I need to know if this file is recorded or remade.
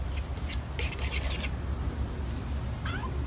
recorded